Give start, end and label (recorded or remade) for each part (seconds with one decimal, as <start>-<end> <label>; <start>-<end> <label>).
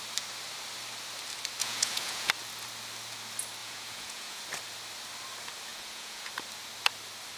0.0-1.6 recorded; 1.6-2.3 remade; 2.3-3.6 recorded; 3.6-4.4 remade; 4.4-5.7 recorded; 5.7-6.3 remade; 6.3-7.4 recorded